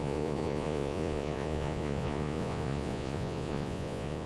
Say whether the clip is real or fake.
fake